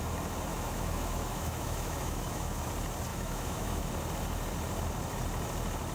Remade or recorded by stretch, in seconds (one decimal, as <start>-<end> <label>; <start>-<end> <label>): 0.0-0.5 recorded; 0.5-2.7 remade; 2.7-3.1 recorded; 3.1-3.9 remade; 3.9-5.9 recorded